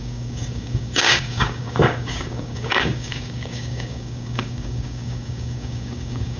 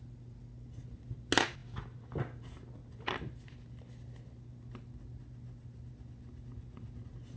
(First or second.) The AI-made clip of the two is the first